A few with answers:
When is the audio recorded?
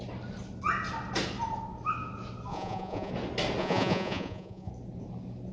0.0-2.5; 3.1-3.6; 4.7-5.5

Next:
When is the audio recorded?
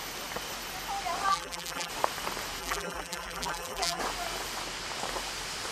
0.0-1.3; 1.9-2.6; 4.0-5.7